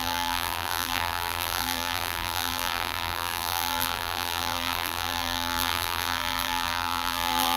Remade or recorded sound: remade